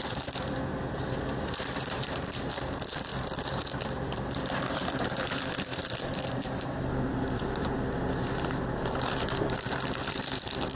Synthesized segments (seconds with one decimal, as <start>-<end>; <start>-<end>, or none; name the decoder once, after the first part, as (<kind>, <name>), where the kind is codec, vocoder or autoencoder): 0.0-10.8 (vocoder, BigVGAN v2)